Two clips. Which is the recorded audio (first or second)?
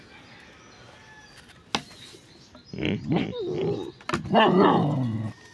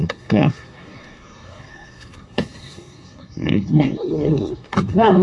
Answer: first